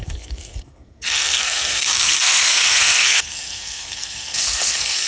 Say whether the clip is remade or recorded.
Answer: remade